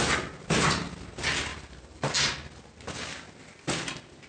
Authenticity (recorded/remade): recorded